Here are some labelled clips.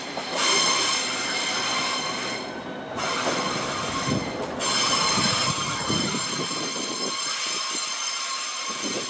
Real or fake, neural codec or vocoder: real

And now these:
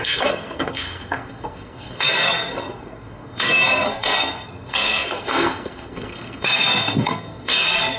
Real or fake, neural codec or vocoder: fake, codec, SNAC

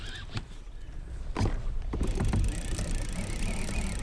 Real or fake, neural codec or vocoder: real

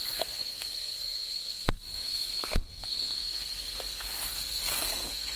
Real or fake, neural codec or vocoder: fake, codec, SNAC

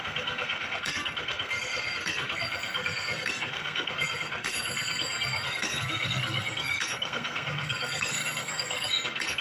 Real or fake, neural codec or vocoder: fake, codec, SNAC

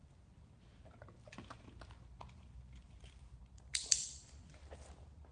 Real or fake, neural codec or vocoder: real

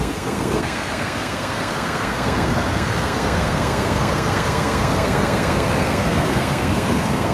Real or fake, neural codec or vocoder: fake, codec, SNAC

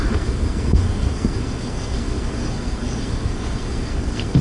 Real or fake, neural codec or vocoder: fake, codec, SNAC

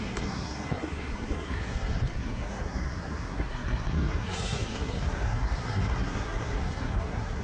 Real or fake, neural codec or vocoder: fake, codec, SNAC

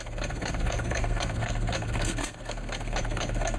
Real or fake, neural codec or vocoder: fake, codec, SNAC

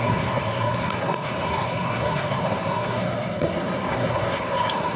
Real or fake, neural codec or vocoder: fake, codec, SNAC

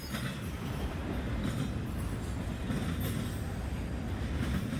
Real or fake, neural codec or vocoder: real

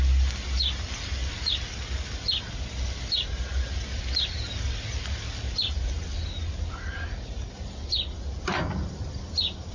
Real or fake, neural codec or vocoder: real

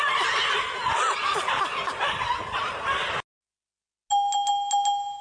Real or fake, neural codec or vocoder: real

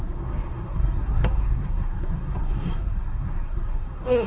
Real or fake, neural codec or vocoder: fake, codec, SNAC